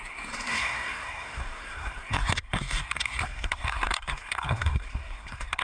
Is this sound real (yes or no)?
no